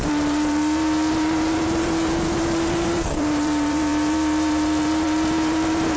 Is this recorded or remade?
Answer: remade